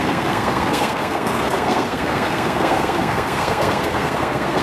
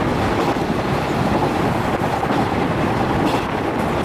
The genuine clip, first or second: second